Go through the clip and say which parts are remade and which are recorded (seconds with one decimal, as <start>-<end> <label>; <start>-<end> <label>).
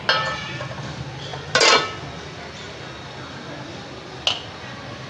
0.0-5.1 recorded